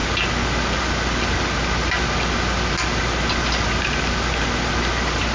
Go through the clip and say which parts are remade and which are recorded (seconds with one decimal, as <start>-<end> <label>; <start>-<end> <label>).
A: 0.0-5.3 recorded